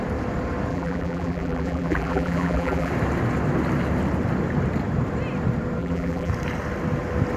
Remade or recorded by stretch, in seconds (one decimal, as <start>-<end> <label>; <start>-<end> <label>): 0.0-0.7 recorded; 0.7-2.9 remade; 2.9-5.8 recorded; 5.8-6.3 remade; 6.3-7.4 recorded